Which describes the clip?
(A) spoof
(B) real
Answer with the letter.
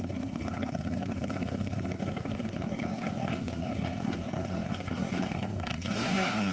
A